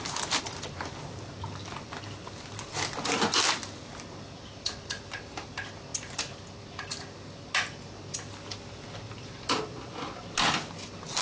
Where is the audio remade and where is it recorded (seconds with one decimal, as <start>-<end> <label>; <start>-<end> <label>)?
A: 0.0-11.2 recorded

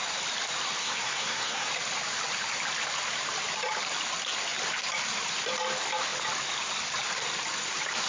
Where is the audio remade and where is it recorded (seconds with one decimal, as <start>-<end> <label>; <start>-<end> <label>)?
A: 0.0-0.8 recorded; 0.8-1.7 remade; 1.7-8.1 recorded

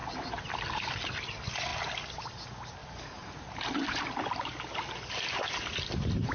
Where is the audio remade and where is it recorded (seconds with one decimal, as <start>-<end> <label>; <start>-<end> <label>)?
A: 0.0-2.8 recorded; 2.8-4.0 remade; 4.0-6.3 recorded

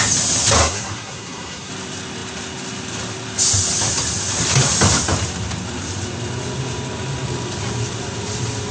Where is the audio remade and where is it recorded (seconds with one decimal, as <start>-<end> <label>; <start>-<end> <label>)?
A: 0.0-0.6 recorded; 0.6-1.7 remade; 1.7-8.7 recorded

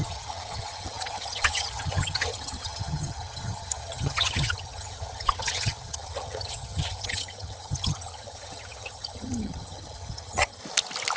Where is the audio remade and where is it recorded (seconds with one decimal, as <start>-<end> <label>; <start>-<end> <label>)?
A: 0.0-10.6 remade; 10.6-11.2 recorded

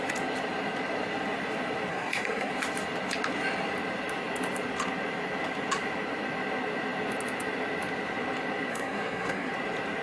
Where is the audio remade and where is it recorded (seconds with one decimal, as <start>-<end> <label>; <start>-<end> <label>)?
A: 0.0-1.9 recorded; 1.9-2.5 remade; 2.5-8.7 recorded; 8.7-9.5 remade; 9.5-10.0 recorded

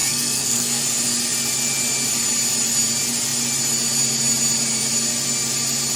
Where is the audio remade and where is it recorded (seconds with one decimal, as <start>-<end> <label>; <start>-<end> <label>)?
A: 0.0-0.8 remade; 0.8-6.0 recorded